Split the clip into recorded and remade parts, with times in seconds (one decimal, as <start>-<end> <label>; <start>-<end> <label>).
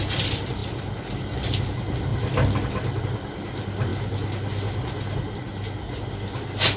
0.0-6.8 recorded